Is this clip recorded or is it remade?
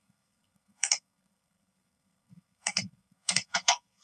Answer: remade